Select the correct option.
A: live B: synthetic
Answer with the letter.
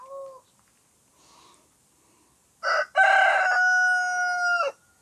A